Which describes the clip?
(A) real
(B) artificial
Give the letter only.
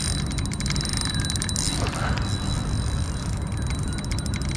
A